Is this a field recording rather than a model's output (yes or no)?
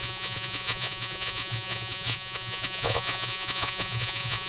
no